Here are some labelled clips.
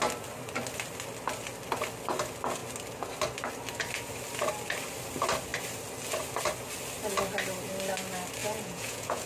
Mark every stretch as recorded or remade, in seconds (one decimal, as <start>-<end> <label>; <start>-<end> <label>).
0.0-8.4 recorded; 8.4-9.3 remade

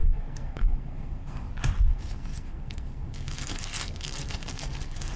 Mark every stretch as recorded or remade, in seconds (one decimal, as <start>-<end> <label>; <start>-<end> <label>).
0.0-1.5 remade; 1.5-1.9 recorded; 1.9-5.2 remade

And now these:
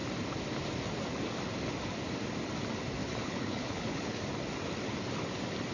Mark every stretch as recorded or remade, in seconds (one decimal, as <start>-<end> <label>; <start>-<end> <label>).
0.0-3.0 recorded; 3.0-4.2 remade; 4.2-5.7 recorded

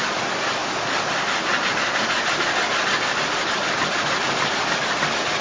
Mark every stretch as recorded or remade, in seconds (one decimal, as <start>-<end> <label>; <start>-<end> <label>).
0.0-5.4 recorded

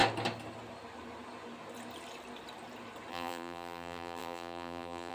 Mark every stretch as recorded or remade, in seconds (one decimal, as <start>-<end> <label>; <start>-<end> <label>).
0.0-3.1 recorded; 3.1-5.1 remade

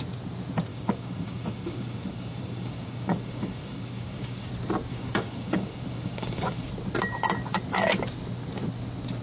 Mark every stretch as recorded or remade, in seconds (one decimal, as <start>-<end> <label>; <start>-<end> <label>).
0.0-0.7 recorded; 0.7-4.5 remade; 4.5-4.9 recorded; 4.9-6.7 remade; 6.7-9.2 recorded